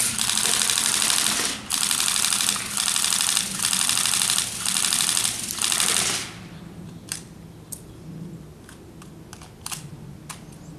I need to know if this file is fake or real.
real